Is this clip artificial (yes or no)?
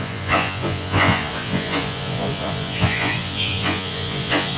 yes